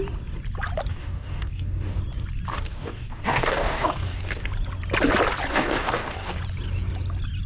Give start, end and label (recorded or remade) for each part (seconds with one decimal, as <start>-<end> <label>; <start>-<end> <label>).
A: 0.0-0.9 recorded; 0.9-2.0 remade; 2.0-2.5 recorded; 2.5-4.5 remade; 4.5-5.5 recorded; 5.5-6.4 remade; 6.4-7.5 recorded